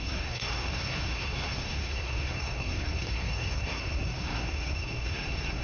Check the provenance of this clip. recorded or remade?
remade